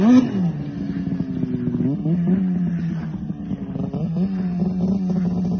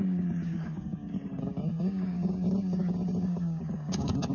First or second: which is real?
first